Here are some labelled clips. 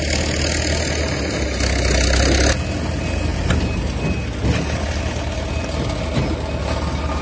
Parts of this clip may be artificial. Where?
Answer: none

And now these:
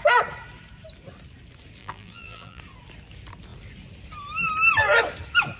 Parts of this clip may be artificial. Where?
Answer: 1.8-2.6 (vocoder, BigVGAN v2)

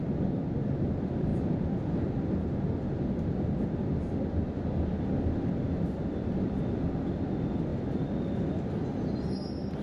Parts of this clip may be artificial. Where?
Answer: none

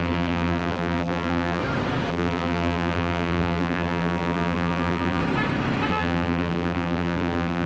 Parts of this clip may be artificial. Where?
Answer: 0.0-1.6 (vocoder, BigVGAN v2); 2.1-5.2; 5.9-7.7

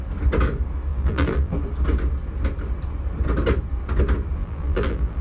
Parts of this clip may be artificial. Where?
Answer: 0.9-1.6 (vocoder, BigVGAN v2); 4.4-5.2

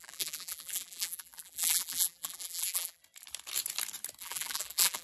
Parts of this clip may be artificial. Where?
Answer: 0.0-3.0 (vocoder, BigVGAN v2); 4.2-5.0

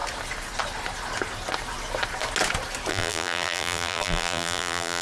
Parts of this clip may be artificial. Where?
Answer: 2.9-5.0 (vocoder, BigVGAN v2)

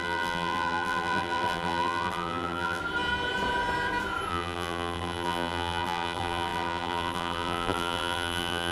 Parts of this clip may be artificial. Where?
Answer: 0.0-2.8 (vocoder, BigVGAN v2); 4.3-8.7